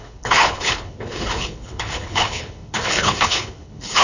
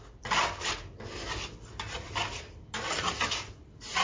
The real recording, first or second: second